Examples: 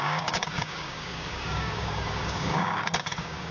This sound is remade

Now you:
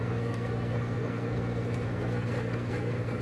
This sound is remade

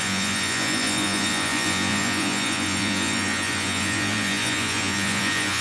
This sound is remade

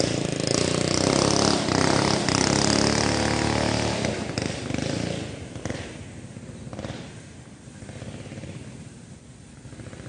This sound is recorded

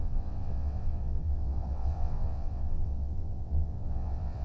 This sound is remade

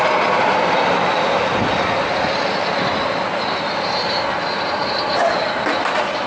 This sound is recorded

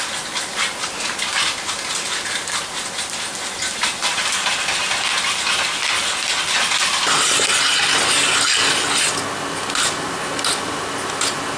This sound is recorded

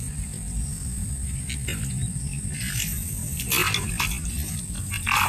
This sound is recorded